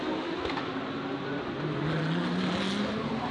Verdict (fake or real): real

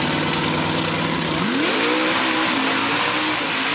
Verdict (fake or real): real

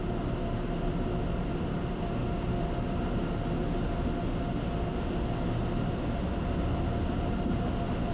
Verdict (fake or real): real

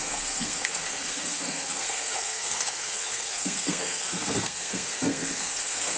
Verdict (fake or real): fake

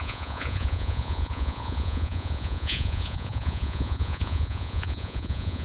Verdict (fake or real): fake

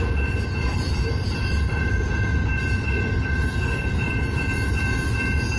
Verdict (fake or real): fake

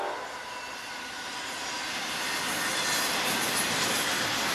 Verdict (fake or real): real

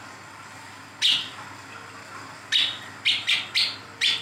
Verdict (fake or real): real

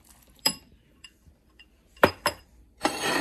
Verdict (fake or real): fake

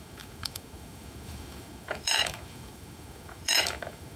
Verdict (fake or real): fake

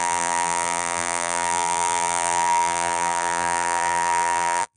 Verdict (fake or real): fake